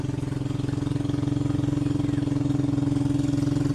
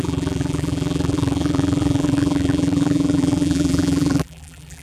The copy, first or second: second